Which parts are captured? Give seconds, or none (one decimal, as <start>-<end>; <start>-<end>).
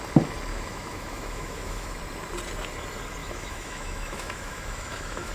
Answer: 0.0-0.5; 2.0-3.2